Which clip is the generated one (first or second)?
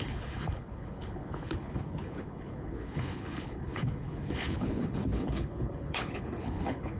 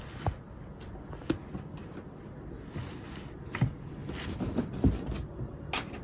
first